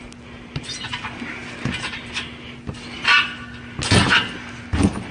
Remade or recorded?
recorded